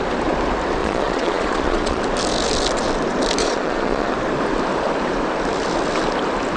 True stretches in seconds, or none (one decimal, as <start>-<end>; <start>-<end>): 0.0-0.8; 2.0-3.4; 4.1-6.6

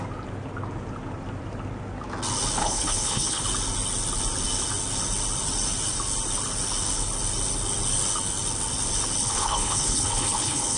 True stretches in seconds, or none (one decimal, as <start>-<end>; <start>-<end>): 0.0-2.6; 3.4-9.2

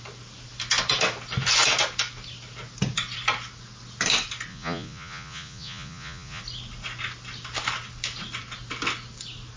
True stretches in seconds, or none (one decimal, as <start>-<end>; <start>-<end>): 0.0-4.5; 6.4-9.6